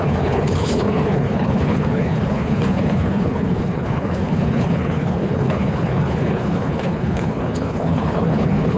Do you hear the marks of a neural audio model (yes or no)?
yes